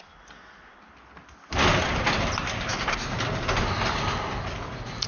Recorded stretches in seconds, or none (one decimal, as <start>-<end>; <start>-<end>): 0.0-5.1